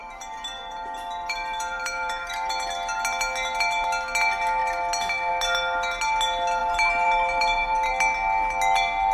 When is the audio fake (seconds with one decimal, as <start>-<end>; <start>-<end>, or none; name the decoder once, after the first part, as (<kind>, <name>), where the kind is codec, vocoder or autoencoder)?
0.0-2.5 (vocoder, BigVGAN v2); 6.6-7.9